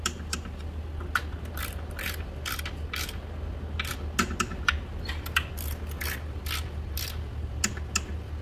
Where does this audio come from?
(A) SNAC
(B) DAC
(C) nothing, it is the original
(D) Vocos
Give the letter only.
C